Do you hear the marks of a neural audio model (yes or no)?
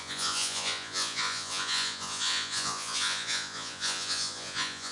yes